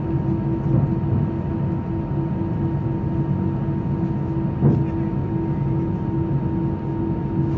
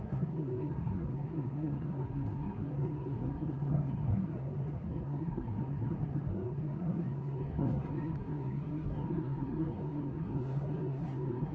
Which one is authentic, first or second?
first